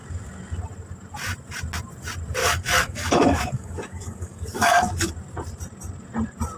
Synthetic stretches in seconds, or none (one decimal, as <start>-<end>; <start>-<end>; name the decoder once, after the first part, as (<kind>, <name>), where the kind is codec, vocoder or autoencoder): 2.4-5.1 (codec, DAC)